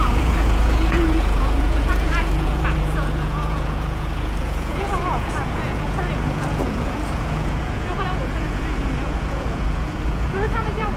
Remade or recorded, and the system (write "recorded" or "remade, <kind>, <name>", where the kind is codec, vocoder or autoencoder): remade, vocoder, Vocos